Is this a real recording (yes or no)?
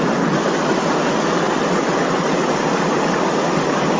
yes